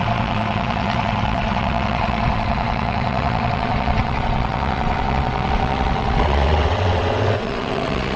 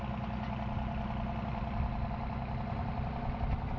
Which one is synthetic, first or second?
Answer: first